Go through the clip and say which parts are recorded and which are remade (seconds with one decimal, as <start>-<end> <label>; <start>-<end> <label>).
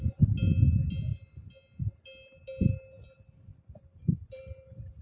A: 0.0-3.5 recorded; 3.5-4.4 remade; 4.4-5.0 recorded